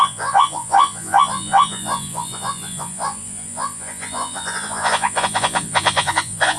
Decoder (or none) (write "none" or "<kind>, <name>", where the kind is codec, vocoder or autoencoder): vocoder, Vocos